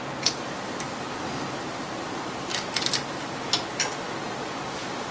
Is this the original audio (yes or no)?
yes